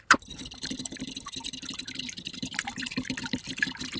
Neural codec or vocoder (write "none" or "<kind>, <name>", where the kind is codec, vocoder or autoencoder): vocoder, BigVGAN v2